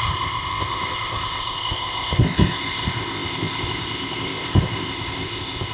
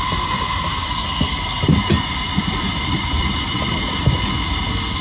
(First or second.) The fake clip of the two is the first